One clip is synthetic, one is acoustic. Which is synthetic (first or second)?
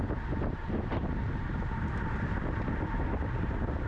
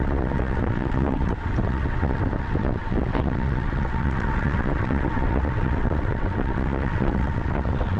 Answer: second